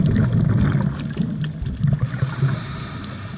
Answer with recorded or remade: recorded